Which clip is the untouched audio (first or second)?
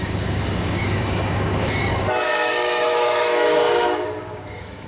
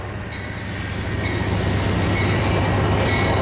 second